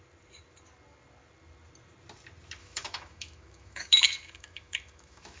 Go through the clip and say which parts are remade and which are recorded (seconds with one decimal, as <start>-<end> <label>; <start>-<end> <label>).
0.0-2.6 recorded; 2.6-5.4 remade

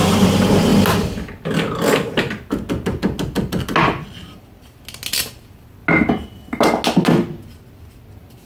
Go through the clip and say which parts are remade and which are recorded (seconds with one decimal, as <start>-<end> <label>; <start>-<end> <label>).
0.0-8.5 recorded

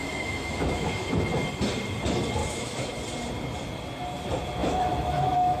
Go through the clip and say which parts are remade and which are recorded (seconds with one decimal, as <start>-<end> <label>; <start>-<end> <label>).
0.0-1.2 remade; 1.2-2.4 recorded; 2.4-3.0 remade; 3.0-4.6 recorded; 4.6-5.6 remade

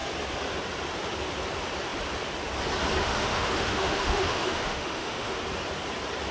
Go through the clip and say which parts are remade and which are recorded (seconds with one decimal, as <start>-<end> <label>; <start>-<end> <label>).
0.0-3.0 recorded; 3.0-5.4 remade; 5.4-6.3 recorded

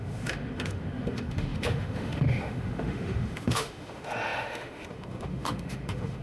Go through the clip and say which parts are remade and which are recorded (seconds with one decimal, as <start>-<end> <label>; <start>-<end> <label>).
0.0-6.2 remade